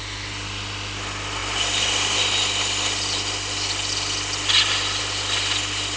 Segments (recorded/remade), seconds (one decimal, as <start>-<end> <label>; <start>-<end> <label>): 0.0-6.0 recorded